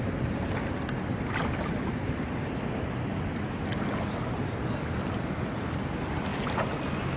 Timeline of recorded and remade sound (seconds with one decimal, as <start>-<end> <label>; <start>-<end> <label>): 0.0-7.2 recorded